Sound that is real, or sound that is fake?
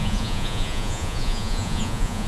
fake